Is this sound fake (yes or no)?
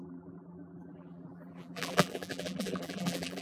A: yes